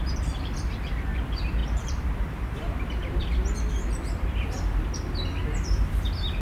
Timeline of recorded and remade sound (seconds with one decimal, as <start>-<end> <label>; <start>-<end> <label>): 0.0-6.4 remade

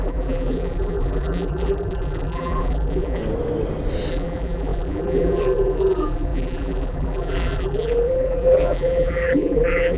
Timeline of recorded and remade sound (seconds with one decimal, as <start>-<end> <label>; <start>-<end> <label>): 0.0-3.2 remade; 3.2-4.1 recorded; 4.1-10.0 remade

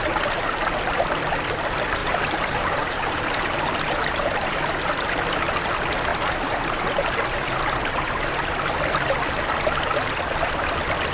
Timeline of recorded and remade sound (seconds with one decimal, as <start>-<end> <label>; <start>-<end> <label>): 0.0-2.0 recorded; 2.0-4.6 remade; 4.6-6.1 recorded; 6.1-7.6 remade; 7.6-11.1 recorded

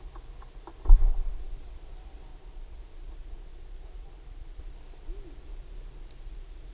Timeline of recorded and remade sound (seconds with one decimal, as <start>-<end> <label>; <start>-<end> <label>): 0.0-2.3 recorded; 2.3-4.6 remade; 4.6-6.7 recorded

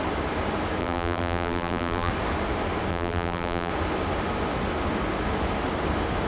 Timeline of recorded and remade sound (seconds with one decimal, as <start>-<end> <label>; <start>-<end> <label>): 0.0-0.8 recorded; 0.8-2.1 remade; 2.1-2.9 recorded; 2.9-3.7 remade; 3.7-6.3 recorded

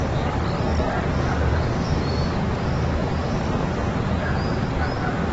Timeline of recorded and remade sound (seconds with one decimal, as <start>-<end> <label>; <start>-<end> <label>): 0.0-1.5 recorded; 1.5-2.1 remade; 2.1-3.0 recorded; 3.0-4.2 remade; 4.2-5.3 recorded

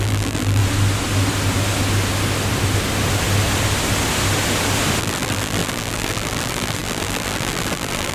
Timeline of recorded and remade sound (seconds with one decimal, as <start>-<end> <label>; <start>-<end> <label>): 0.0-0.6 remade; 0.6-5.0 recorded; 5.0-8.1 remade